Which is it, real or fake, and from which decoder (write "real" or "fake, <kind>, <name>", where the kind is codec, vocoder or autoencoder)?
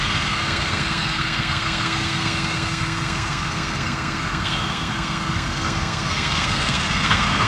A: fake, codec, SNAC